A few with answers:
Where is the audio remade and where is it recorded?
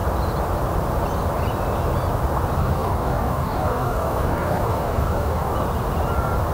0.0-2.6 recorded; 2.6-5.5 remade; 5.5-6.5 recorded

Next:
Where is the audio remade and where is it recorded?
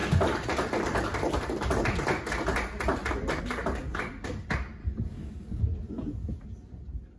0.0-4.8 recorded; 4.8-5.6 remade; 5.6-7.2 recorded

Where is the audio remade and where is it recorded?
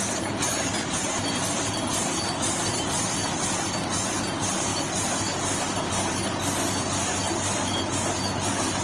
0.0-8.8 recorded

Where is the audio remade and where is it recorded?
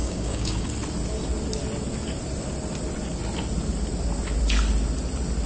0.0-0.7 remade; 0.7-5.5 recorded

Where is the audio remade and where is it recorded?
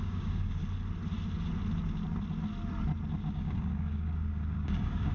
0.0-0.6 remade; 0.6-3.3 recorded; 3.3-5.1 remade